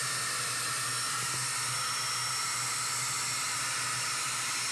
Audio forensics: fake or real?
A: real